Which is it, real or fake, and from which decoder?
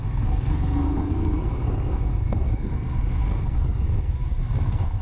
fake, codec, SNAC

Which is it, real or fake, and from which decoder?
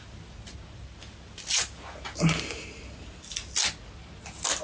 real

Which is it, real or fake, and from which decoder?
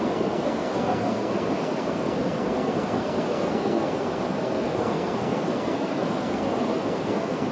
fake, codec, SNAC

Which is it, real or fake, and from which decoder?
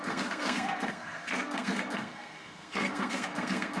fake, codec, SNAC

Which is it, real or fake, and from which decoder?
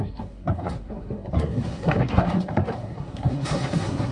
fake, codec, SNAC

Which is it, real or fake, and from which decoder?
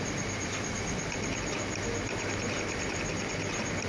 real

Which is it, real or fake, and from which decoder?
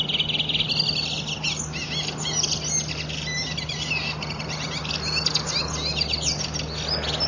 real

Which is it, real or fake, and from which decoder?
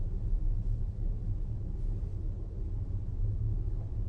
real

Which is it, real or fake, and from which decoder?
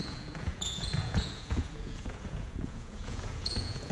fake, vocoder, Vocos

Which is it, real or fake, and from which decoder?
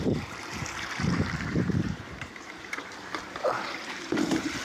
fake, vocoder, BigVGAN v2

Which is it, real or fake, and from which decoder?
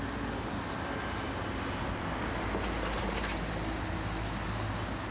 real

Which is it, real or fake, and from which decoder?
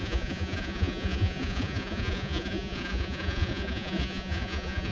fake, vocoder, Vocos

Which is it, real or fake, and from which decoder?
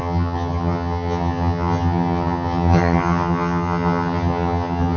fake, vocoder, HiFi-GAN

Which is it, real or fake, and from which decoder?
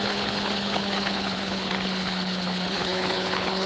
fake, codec, HILCodec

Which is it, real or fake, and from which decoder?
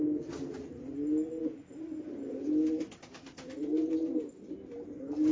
real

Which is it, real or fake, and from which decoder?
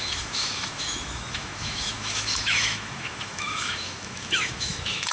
fake, autoencoder, DAC-VAE